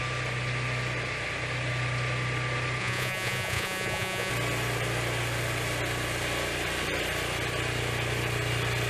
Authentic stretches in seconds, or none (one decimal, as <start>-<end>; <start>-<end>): 0.0-2.8; 4.3-8.9